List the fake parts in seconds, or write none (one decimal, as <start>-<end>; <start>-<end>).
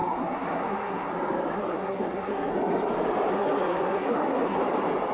0.0-1.1; 1.5-2.5; 3.3-4.6